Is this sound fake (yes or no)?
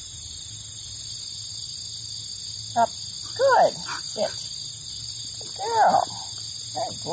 no